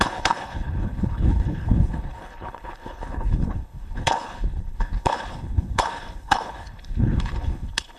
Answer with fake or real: fake